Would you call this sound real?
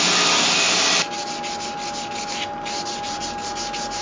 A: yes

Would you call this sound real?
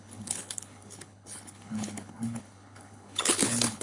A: no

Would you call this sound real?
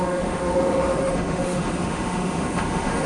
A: no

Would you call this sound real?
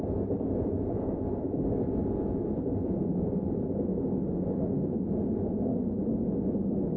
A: yes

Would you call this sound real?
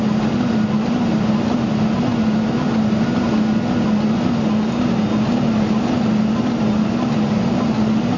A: yes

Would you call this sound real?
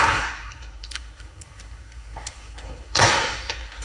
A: no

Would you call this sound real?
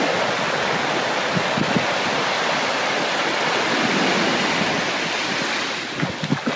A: yes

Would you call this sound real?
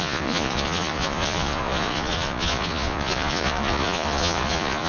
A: no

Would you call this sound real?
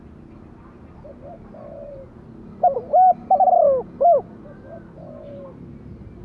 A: yes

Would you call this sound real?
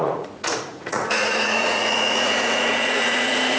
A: no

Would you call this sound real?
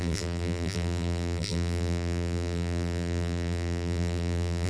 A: no